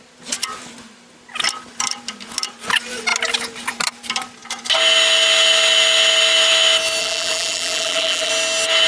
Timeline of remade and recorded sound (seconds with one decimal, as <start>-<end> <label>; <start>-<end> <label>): 0.0-7.0 recorded; 7.0-8.3 remade; 8.3-8.9 recorded